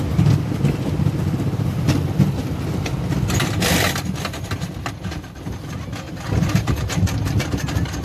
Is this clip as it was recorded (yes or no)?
yes